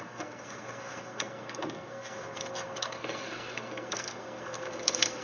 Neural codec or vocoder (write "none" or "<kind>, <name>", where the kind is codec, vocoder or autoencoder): codec, SNAC